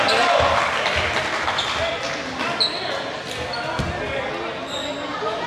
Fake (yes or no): no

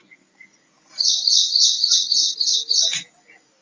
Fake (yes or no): no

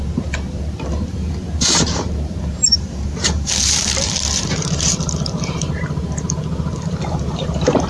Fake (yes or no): yes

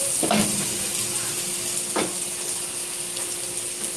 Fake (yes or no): no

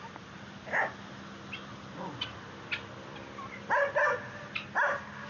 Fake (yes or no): no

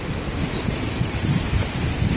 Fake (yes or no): yes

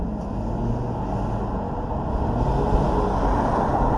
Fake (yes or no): no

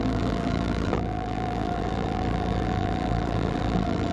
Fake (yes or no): yes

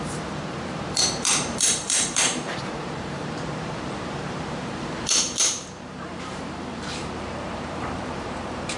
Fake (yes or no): yes